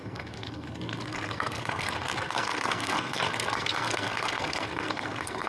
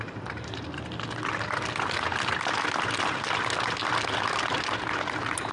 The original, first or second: second